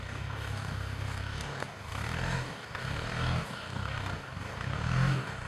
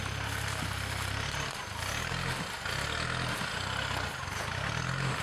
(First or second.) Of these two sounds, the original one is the second